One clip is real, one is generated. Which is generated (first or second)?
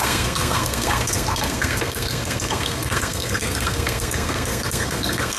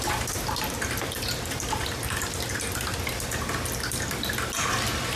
first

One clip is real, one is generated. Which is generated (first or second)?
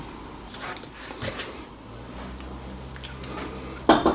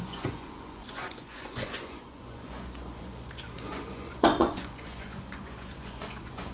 second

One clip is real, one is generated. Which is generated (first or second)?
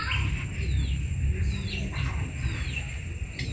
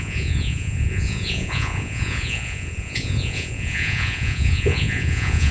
second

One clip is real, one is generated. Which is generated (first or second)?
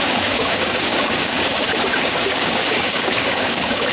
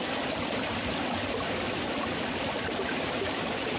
first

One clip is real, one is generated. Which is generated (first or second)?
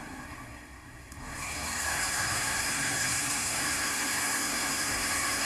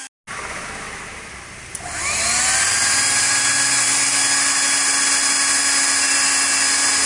first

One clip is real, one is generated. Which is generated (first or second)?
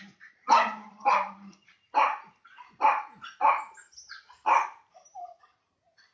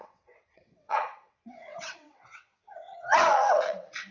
second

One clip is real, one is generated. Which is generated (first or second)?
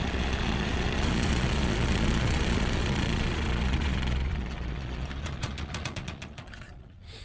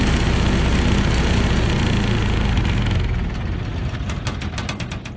first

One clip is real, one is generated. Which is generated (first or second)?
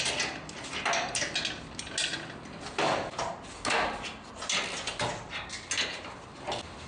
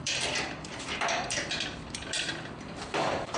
second